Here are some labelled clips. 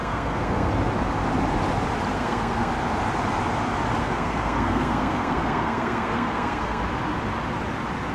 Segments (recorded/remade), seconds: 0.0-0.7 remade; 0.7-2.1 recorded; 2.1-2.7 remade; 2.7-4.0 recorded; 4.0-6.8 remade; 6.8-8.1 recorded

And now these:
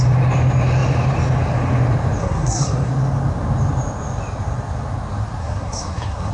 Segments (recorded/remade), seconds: 0.0-2.2 recorded; 2.2-2.9 remade; 2.9-5.4 recorded; 5.4-6.3 remade